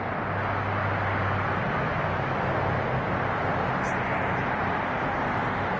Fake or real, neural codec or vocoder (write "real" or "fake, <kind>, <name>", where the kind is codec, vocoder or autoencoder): real